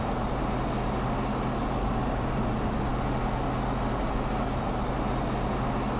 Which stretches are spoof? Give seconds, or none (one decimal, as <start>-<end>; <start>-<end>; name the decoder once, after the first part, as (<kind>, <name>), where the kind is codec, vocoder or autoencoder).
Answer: none